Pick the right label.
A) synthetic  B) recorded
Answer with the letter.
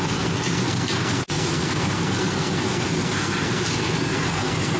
A